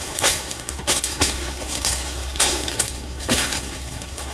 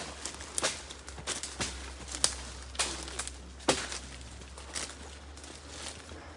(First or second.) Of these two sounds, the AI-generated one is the first